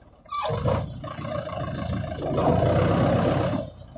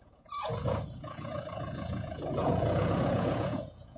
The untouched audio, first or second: first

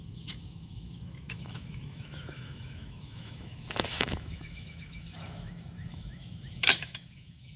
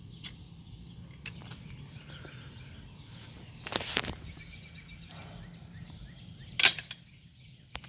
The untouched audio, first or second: second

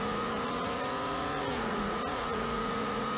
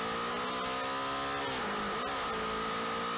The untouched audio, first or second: second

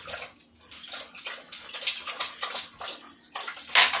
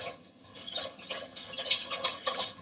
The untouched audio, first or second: first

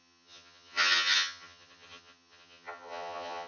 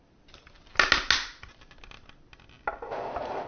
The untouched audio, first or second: second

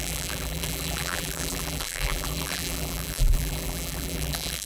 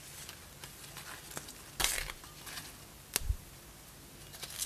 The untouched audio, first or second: second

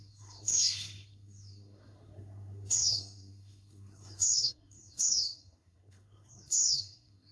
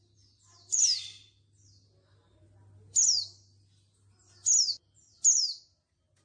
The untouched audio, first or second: second